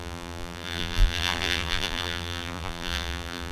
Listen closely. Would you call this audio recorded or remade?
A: remade